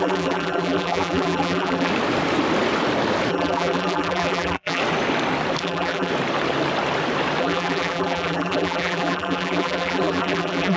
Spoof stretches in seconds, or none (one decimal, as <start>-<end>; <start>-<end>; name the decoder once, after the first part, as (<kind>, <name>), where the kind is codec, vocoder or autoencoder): 0.0-1.9 (vocoder, BigVGAN v2); 3.3-4.8; 5.6-6.1; 7.4-10.8